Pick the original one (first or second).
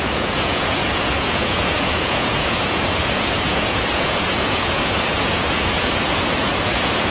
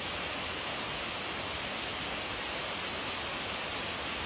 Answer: second